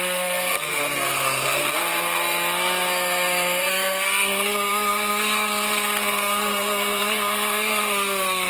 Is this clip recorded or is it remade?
remade